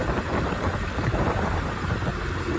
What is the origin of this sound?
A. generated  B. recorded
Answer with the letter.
A